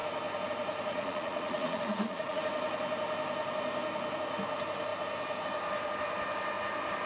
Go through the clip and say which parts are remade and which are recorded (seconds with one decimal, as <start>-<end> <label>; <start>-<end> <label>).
0.0-0.9 recorded; 0.9-2.4 remade; 2.4-7.1 recorded